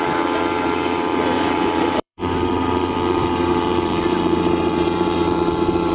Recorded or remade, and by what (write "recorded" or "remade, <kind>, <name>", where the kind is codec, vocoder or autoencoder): remade, vocoder, BigVGAN v2